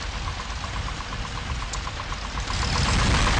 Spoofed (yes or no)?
no